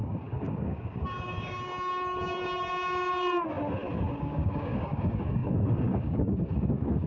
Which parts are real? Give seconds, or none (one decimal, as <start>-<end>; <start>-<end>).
1.7-4.1